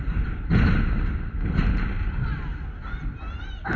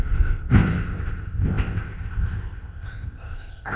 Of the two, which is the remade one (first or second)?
second